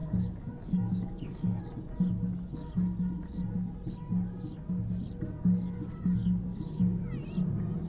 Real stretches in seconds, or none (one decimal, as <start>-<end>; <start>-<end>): 1.6-6.2; 6.8-7.9